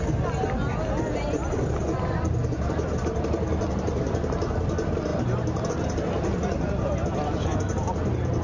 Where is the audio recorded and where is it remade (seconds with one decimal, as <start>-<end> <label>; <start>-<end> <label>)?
0.0-8.4 recorded